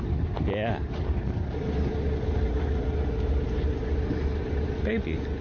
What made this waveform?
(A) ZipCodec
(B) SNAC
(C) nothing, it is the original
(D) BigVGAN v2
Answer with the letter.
C